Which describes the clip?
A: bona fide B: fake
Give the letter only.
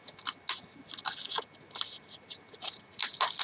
A